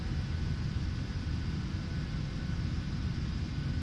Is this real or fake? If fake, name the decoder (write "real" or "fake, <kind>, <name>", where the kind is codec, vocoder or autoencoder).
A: real